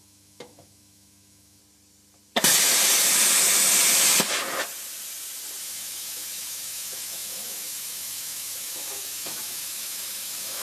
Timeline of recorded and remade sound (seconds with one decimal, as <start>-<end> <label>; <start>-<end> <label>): 0.0-1.6 remade; 1.6-5.6 recorded; 5.6-10.6 remade